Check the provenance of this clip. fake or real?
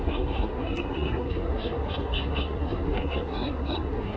fake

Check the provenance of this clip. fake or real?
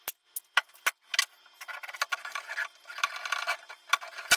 real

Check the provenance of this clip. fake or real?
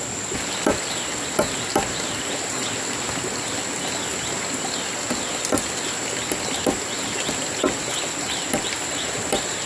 real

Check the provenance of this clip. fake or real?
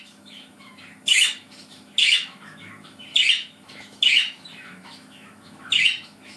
fake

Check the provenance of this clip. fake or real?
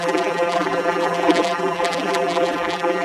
fake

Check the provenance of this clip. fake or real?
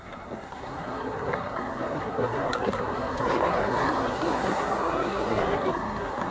fake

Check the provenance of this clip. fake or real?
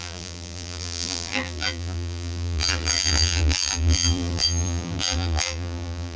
fake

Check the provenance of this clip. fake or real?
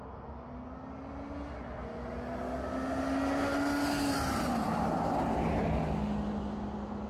real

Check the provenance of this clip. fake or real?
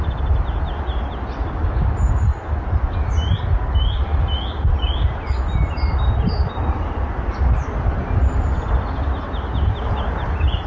real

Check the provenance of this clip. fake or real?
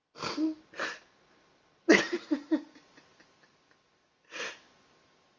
real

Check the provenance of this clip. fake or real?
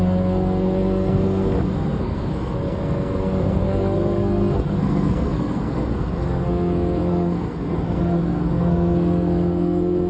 fake